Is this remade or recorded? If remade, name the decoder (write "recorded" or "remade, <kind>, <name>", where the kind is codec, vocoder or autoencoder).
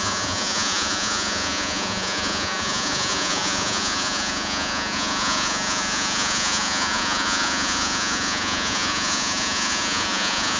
remade, vocoder, Vocos